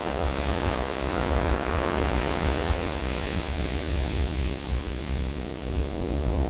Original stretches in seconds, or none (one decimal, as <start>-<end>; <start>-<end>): none